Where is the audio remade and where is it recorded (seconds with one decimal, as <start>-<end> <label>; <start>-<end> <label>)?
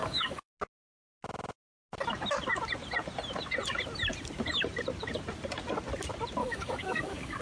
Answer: 0.0-0.5 remade; 0.5-6.4 recorded; 6.4-7.4 remade